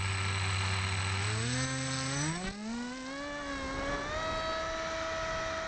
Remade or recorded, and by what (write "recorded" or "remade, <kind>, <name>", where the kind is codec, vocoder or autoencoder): recorded